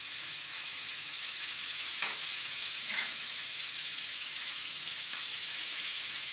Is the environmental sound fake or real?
fake